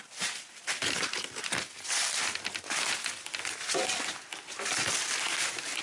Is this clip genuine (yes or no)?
yes